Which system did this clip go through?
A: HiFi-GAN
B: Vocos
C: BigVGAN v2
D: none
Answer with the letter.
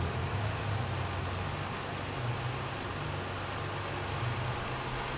D